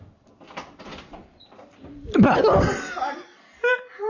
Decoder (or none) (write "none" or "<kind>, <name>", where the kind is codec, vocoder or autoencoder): none